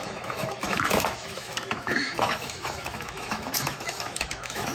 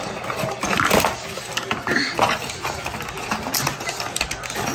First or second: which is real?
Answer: second